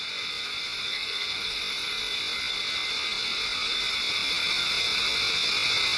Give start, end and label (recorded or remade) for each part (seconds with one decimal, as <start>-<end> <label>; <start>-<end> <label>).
0.0-0.9 recorded; 0.9-1.6 remade; 1.6-6.0 recorded